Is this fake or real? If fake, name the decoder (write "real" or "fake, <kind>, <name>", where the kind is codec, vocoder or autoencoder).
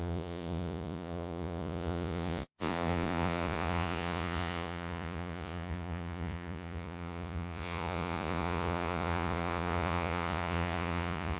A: fake, vocoder, Vocos